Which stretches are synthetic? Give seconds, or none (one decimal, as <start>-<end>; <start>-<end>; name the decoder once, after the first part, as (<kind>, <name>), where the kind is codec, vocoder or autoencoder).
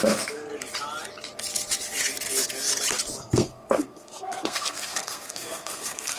0.0-0.5 (codec, SNAC); 3.2-6.2